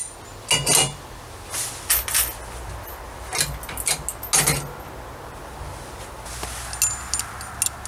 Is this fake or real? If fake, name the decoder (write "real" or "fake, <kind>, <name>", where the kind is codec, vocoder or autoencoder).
real